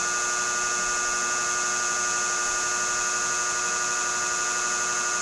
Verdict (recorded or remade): recorded